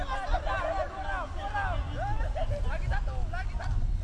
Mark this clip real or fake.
real